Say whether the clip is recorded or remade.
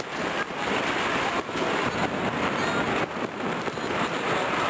recorded